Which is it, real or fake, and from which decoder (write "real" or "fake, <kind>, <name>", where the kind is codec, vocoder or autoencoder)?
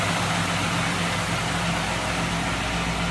real